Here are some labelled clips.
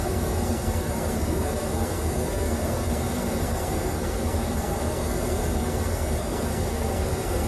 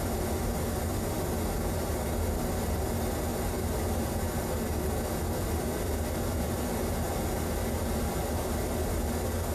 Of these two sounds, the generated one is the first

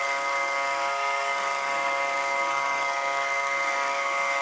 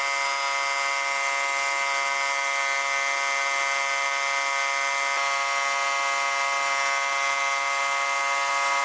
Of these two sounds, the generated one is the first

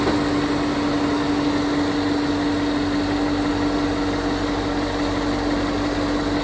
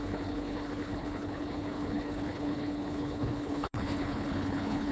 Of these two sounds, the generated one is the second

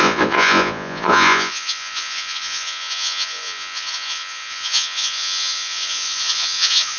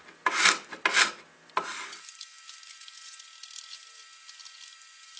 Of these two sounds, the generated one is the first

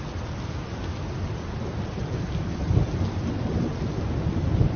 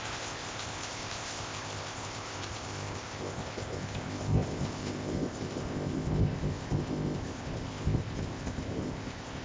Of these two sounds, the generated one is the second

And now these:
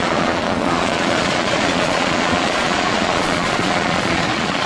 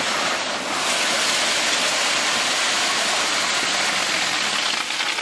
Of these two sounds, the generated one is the first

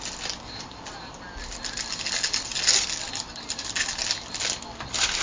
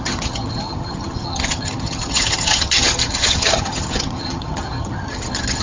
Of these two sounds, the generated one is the second